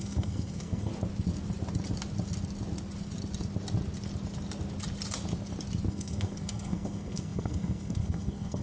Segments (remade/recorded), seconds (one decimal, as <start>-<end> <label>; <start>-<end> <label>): 0.0-0.9 remade; 0.9-5.9 recorded; 5.9-8.6 remade